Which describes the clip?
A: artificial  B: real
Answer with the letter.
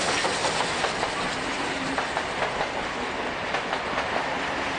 B